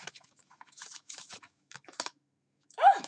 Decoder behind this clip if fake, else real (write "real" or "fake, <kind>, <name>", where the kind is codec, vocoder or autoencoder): fake, autoencoder, DAC-VAE